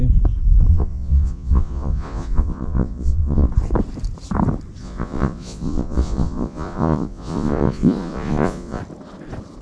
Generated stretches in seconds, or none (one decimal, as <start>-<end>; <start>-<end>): 0.7-3.5; 4.8-8.8